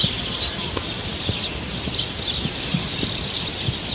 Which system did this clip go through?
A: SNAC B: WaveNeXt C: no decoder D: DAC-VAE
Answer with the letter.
C